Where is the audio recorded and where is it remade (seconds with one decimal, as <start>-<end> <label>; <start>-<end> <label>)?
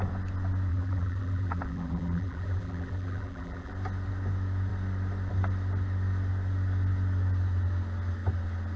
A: 0.0-0.7 recorded; 0.7-3.7 remade; 3.7-8.8 recorded